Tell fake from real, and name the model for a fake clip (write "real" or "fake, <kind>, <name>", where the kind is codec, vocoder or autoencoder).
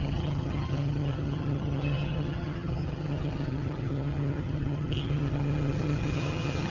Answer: fake, vocoder, HiFi-GAN